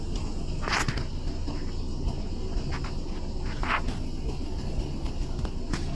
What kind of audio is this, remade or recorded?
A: recorded